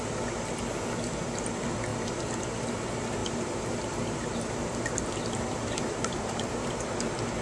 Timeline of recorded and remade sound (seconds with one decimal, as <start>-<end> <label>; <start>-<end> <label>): 0.0-3.2 recorded; 3.2-6.7 remade; 6.7-7.4 recorded